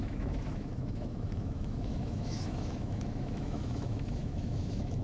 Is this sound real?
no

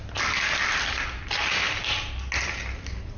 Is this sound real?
yes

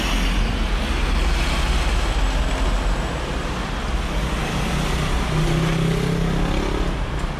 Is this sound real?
yes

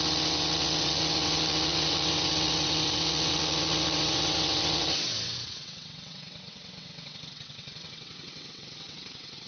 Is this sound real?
no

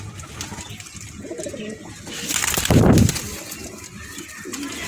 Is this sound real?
yes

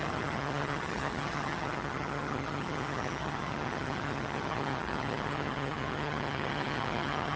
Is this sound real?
no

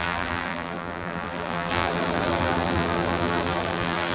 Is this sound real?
no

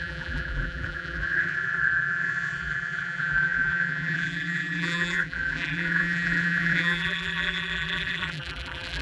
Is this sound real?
no